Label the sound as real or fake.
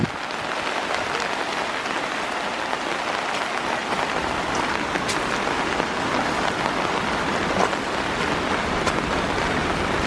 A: real